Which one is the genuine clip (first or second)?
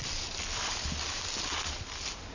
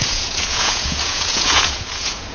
first